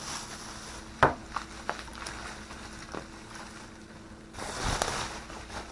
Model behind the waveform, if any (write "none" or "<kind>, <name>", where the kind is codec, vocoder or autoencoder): none